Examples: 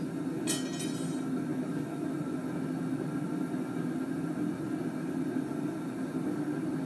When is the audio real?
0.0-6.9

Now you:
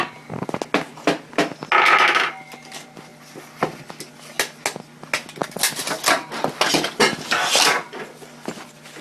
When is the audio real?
0.0-9.0

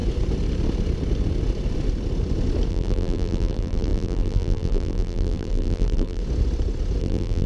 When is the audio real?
0.0-2.7; 6.2-7.0

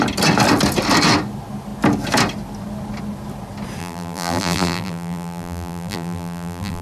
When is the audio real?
0.0-3.8

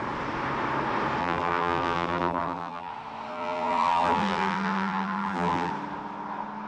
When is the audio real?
0.0-1.2; 2.9-3.3; 5.7-6.7